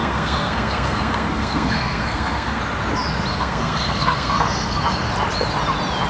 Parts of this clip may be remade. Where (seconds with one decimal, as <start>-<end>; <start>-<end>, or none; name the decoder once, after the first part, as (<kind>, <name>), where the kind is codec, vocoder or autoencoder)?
0.0-2.6 (codec, SNAC); 3.3-4.8